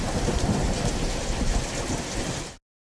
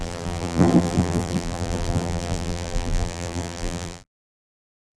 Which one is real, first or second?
first